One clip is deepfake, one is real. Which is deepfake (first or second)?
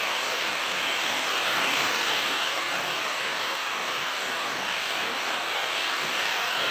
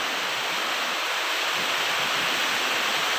first